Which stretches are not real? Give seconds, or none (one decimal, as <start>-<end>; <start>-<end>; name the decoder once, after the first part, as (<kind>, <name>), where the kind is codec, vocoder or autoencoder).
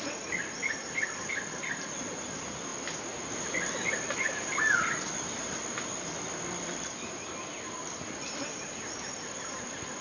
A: none